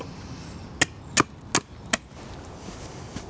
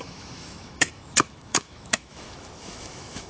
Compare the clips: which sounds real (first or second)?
first